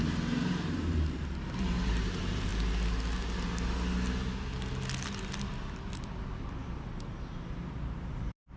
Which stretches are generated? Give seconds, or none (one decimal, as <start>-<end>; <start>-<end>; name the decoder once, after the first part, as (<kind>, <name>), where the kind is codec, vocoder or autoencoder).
0.0-2.5 (vocoder, BigVGAN v2); 7.7-8.6